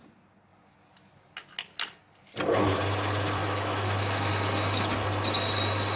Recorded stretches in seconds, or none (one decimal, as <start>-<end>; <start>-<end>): 0.0-3.4; 4.3-6.0